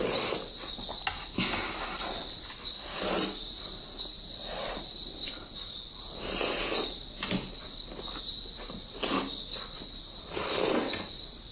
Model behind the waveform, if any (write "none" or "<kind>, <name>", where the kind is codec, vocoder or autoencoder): none